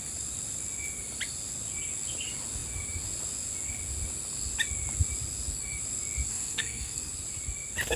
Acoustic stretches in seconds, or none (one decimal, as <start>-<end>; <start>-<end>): 0.0-6.3; 7.1-8.0